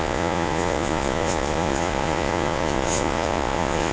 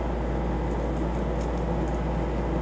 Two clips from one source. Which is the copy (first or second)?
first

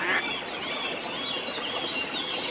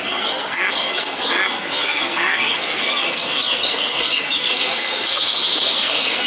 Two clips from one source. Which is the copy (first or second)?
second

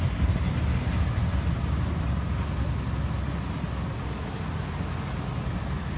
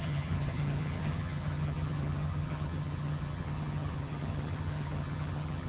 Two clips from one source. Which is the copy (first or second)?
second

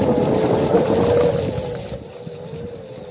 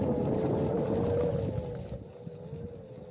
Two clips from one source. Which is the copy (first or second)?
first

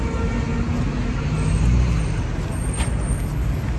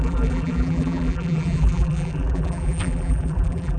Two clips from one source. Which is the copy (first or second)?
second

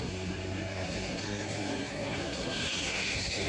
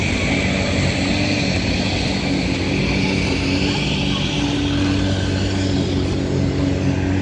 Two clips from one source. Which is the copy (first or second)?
first